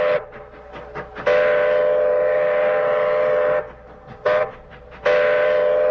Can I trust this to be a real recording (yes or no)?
yes